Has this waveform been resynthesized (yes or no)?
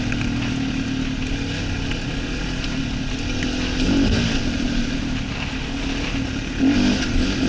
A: no